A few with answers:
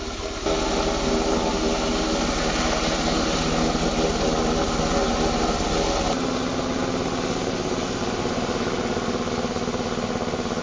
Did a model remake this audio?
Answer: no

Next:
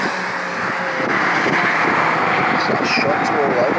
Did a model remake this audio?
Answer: no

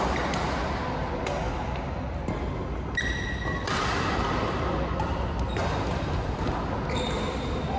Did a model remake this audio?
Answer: no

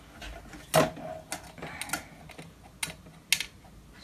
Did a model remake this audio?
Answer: no